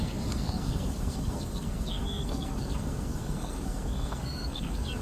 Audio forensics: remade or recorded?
remade